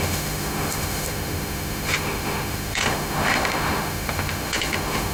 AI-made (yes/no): yes